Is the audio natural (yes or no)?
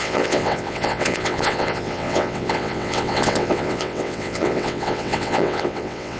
no